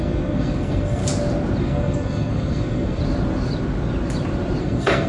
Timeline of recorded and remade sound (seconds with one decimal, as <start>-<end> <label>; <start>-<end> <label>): 0.0-1.0 remade; 1.0-1.6 recorded; 1.6-3.0 remade; 3.0-4.6 recorded; 4.6-5.1 remade